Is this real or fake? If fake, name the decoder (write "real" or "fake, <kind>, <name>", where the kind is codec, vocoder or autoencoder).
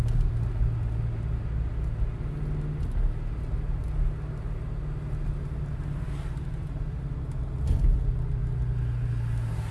real